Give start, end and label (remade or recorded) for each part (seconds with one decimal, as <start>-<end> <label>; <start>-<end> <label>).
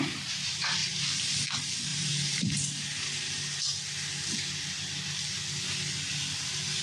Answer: 0.0-0.8 recorded; 0.8-1.3 remade; 1.3-1.9 recorded; 1.9-2.5 remade; 2.5-6.8 recorded